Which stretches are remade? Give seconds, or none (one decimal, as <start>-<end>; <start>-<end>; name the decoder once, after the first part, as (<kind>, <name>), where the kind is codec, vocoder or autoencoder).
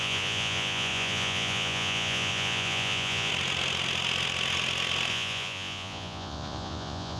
0.0-3.3 (vocoder, Vocos); 5.1-7.2